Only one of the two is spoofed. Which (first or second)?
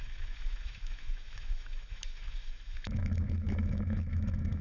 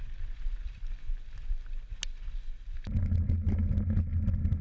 first